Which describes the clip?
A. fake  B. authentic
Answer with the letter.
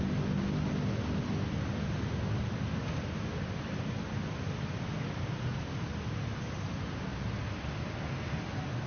B